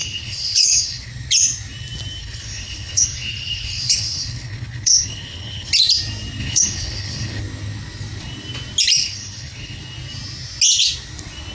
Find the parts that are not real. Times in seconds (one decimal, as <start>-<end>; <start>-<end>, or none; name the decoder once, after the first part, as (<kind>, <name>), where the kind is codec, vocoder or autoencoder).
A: 0.0-1.1 (codec, HILCodec); 2.2-5.7; 6.4-7.4; 9.0-9.8

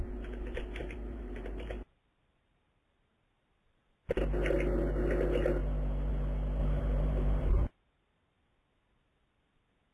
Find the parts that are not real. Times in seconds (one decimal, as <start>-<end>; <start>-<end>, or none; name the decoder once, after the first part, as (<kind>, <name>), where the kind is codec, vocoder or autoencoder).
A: 0.8-3.1 (vocoder, BigVGAN v2); 6.6-7.5